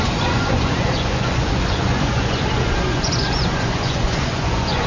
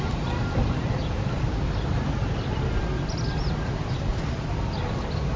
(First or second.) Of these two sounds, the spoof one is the first